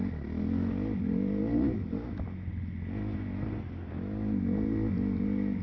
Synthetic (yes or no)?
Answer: no